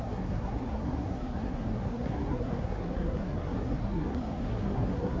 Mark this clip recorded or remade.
remade